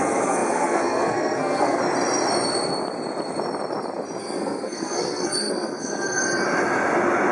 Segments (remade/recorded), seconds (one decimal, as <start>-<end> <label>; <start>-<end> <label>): 0.0-1.8 remade; 1.8-4.2 recorded; 4.2-6.2 remade; 6.2-7.3 recorded